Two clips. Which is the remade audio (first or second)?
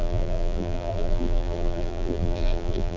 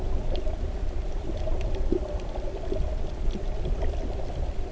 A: first